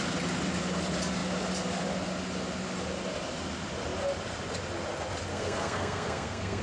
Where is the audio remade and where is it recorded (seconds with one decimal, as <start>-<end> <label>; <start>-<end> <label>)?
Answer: 0.0-5.3 recorded; 5.3-6.6 remade